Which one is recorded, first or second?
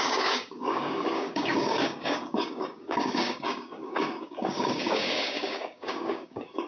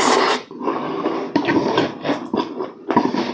second